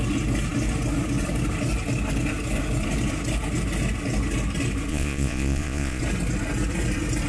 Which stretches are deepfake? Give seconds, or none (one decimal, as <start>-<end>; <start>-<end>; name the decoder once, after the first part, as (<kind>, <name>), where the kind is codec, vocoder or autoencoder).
4.9-6.0 (vocoder, Vocos)